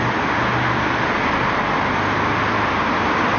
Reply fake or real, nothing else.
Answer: real